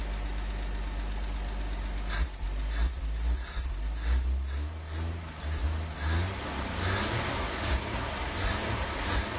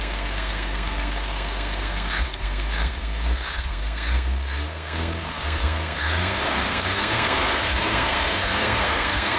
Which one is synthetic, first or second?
second